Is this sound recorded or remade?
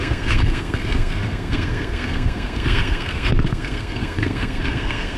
remade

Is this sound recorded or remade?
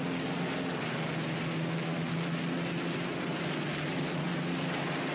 recorded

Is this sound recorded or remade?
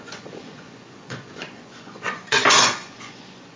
remade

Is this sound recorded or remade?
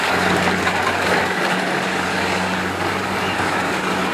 remade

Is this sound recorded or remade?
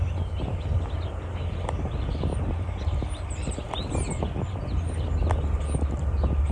recorded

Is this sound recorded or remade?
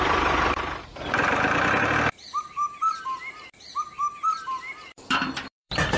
remade